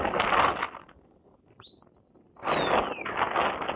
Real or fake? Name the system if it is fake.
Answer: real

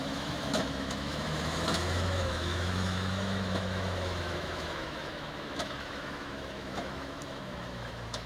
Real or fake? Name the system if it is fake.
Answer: fake, autoencoder, DAC-VAE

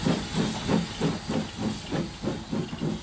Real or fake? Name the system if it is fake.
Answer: real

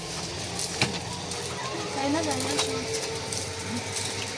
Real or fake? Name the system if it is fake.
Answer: real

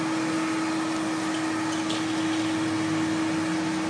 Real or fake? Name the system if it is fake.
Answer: real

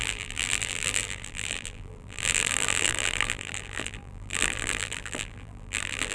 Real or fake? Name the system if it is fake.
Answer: fake, vocoder, BigVGAN v2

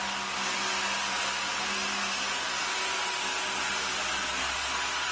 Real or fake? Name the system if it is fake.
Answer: real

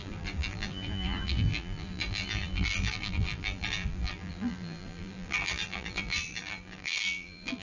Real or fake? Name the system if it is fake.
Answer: fake, vocoder, BigVGAN v2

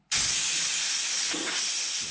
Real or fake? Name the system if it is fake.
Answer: real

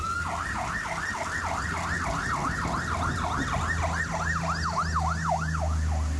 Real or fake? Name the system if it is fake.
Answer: real